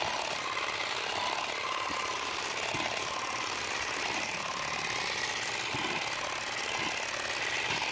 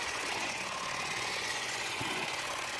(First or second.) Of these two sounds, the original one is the first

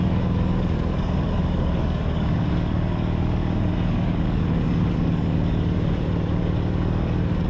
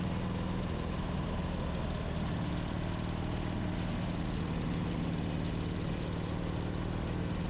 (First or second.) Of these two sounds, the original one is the second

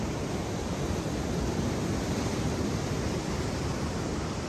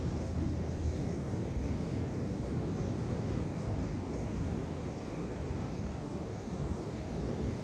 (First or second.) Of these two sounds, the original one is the first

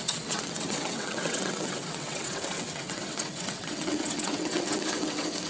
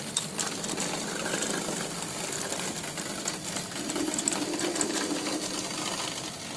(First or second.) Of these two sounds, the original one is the second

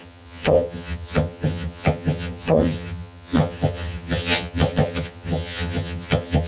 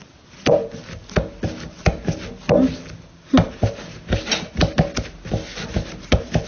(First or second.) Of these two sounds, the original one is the second